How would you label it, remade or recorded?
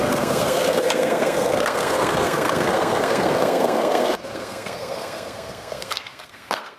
remade